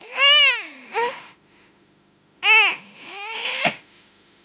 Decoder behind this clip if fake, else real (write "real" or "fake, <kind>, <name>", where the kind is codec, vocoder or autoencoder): fake, autoencoder, DAC-VAE